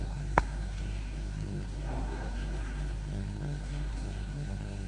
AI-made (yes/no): yes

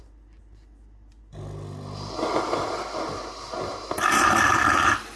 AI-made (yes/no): no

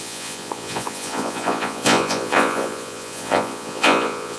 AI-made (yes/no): yes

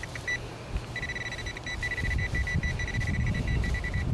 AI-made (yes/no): yes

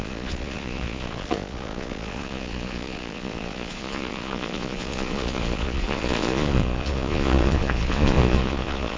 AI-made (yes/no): yes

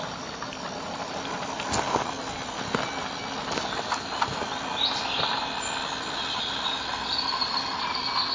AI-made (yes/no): no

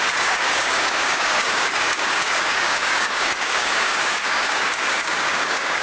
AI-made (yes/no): yes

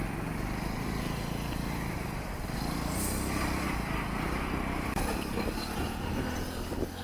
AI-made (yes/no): no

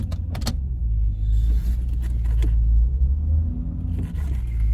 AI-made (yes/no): no